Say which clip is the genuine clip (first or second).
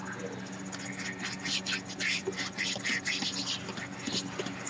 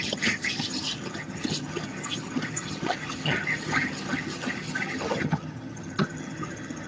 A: first